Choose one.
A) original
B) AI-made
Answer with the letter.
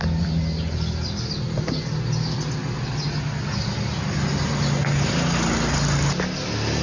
A